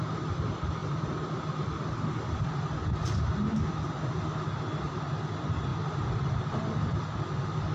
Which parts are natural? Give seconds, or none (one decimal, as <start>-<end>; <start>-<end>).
0.0-0.8; 2.5-5.7; 6.8-7.7